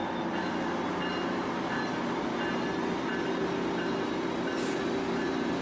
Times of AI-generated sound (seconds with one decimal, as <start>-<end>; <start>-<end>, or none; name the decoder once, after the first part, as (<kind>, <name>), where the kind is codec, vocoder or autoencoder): none